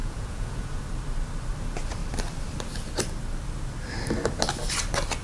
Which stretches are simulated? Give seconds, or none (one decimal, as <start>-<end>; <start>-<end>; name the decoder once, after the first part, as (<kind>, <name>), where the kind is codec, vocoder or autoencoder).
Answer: 0.0-0.8 (vocoder, Vocos)